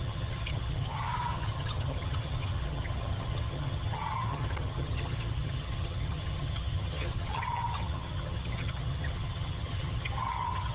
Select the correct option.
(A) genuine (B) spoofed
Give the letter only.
B